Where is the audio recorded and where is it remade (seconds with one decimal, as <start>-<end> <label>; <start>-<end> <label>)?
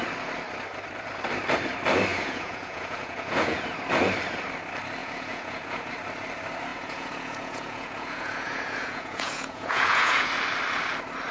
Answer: 0.0-2.1 recorded; 2.1-3.6 remade; 3.6-5.0 recorded; 5.0-5.9 remade; 5.9-6.7 recorded; 6.7-10.3 remade; 10.3-11.3 recorded